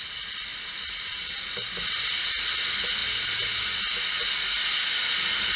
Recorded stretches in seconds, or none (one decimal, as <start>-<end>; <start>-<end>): 0.0-0.5; 2.5-3.0; 3.6-5.6